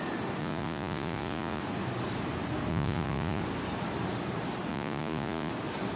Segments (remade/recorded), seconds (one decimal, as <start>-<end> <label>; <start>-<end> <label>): 0.0-0.4 recorded; 0.4-1.6 remade; 1.6-2.7 recorded; 2.7-3.4 remade; 3.4-4.7 recorded; 4.7-5.5 remade; 5.5-6.0 recorded